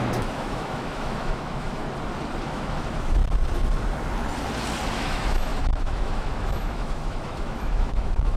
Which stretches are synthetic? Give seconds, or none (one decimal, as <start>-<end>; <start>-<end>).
0.0-1.8; 2.4-3.2; 4.9-8.4